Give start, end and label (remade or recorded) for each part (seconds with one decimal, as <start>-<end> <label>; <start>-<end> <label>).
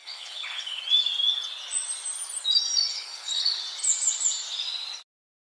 0.0-0.8 remade; 0.8-2.9 recorded; 2.9-3.6 remade; 3.6-5.5 recorded